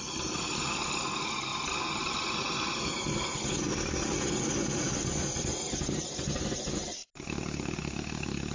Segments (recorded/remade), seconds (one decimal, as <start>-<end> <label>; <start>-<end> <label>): 0.0-8.5 recorded